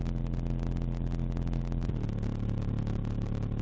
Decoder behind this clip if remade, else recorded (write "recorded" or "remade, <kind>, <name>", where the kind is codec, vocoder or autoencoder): recorded